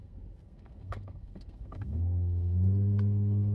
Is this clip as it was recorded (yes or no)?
no